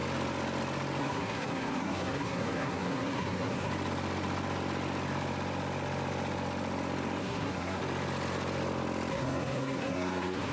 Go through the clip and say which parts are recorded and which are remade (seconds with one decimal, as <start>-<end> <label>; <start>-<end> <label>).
0.0-1.0 recorded; 1.0-3.7 remade; 3.7-7.2 recorded; 7.2-7.8 remade; 7.8-9.1 recorded; 9.1-10.5 remade